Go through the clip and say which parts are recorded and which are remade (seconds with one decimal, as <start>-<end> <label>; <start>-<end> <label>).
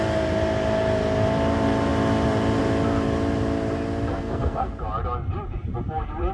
0.0-4.1 recorded; 4.1-4.7 remade; 4.7-6.3 recorded